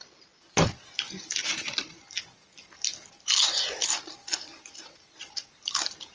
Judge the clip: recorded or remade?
recorded